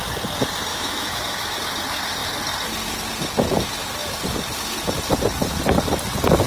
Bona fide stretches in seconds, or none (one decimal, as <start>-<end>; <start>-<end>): 0.0-0.7; 1.6-6.5